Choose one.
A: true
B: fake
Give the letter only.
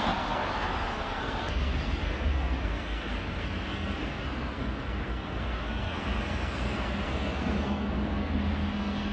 B